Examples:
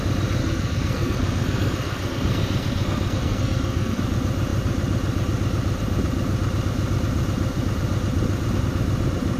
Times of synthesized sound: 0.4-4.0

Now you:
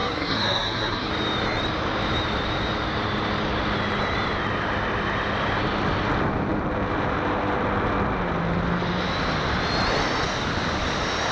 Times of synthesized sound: 0.0-1.1

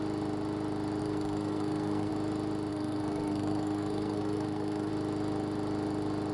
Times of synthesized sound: 1.0-2.1; 2.7-4.9